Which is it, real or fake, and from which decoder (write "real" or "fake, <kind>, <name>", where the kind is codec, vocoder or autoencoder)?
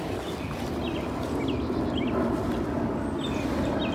real